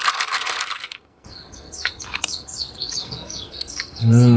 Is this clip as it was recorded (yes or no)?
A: no